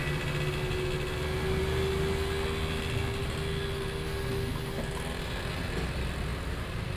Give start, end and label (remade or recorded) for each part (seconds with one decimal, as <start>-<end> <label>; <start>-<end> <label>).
0.0-7.0 recorded